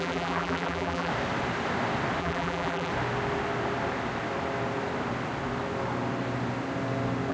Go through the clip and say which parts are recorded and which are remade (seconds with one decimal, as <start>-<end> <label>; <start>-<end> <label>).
0.0-1.1 remade; 1.1-2.2 recorded; 2.2-2.9 remade; 2.9-7.3 recorded